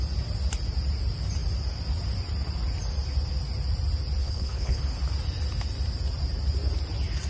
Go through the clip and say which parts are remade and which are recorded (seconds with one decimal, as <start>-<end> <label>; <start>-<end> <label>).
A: 0.0-4.2 recorded; 4.2-4.8 remade; 4.8-7.3 recorded

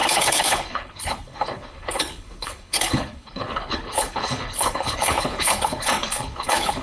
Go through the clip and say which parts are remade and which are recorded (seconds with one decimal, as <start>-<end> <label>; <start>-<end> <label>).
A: 0.0-6.8 remade

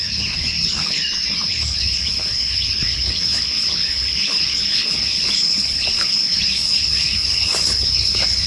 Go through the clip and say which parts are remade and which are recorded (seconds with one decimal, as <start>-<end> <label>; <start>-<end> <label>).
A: 0.0-1.0 remade; 1.0-1.5 recorded; 1.5-8.5 remade

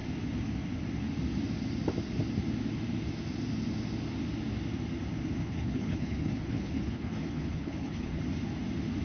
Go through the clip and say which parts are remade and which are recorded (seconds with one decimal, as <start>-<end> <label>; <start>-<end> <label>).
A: 0.0-5.4 recorded; 5.4-8.2 remade; 8.2-9.0 recorded

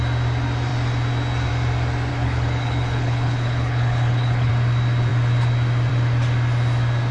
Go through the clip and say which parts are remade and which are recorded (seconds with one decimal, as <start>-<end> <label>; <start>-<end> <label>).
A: 0.0-2.1 recorded; 2.1-4.5 remade; 4.5-7.1 recorded

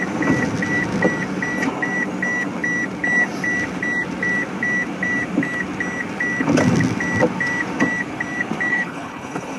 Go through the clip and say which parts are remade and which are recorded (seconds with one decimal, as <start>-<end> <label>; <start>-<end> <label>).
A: 0.0-8.7 recorded; 8.7-9.6 remade

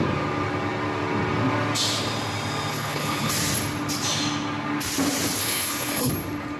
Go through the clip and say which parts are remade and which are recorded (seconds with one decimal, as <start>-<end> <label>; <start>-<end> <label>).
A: 0.0-2.7 recorded; 2.7-3.3 remade; 3.3-5.4 recorded; 5.4-6.1 remade; 6.1-6.6 recorded

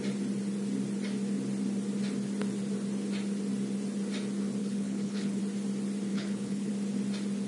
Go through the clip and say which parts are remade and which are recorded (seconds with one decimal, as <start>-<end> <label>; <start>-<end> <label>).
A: 0.0-4.6 recorded; 4.6-5.4 remade; 5.4-6.1 recorded; 6.1-6.7 remade; 6.7-7.5 recorded